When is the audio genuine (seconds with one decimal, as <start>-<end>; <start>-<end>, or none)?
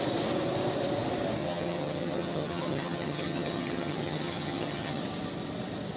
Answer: 0.0-1.4; 5.0-6.0